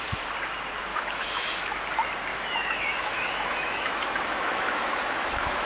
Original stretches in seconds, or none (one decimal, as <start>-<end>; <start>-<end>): 0.0-0.9; 1.8-2.3